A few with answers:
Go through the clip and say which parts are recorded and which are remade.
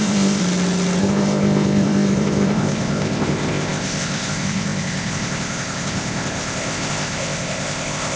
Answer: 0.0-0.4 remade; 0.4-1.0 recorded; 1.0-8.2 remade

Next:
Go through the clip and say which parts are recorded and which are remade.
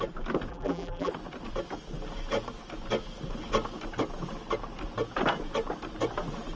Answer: 0.0-0.5 recorded; 0.5-1.1 remade; 1.1-6.6 recorded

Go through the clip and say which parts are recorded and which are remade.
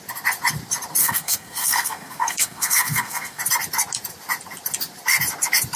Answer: 0.0-1.0 recorded; 1.0-3.4 remade; 3.4-5.8 recorded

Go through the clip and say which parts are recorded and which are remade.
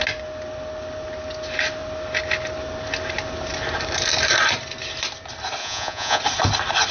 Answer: 0.0-5.6 recorded; 5.6-6.2 remade; 6.2-6.9 recorded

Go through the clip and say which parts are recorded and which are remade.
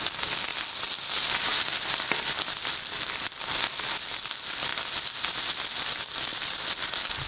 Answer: 0.0-7.3 recorded